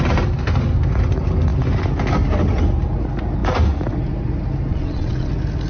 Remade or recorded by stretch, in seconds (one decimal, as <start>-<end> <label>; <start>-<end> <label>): 0.0-4.7 recorded; 4.7-5.3 remade; 5.3-5.7 recorded